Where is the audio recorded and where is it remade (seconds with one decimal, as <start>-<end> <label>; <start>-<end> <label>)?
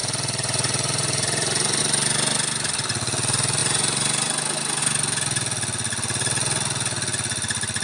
0.0-1.8 remade; 1.8-3.6 recorded; 3.6-4.8 remade; 4.8-7.8 recorded